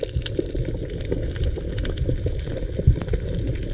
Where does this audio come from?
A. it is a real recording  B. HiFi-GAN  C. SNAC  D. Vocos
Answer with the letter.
A